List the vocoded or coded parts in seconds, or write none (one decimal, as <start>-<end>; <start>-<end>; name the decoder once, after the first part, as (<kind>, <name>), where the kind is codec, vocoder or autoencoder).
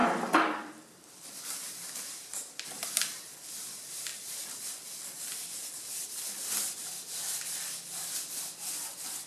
0.0-2.9 (vocoder, BigVGAN v2); 4.1-5.2